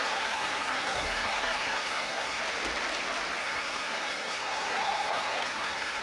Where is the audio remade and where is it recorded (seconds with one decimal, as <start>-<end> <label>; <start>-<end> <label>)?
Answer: 0.0-2.4 remade; 2.4-3.4 recorded; 3.4-6.0 remade